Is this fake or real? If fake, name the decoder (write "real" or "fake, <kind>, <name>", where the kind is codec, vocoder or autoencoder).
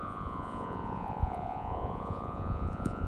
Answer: fake, vocoder, Vocos